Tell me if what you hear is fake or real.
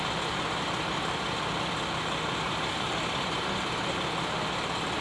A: real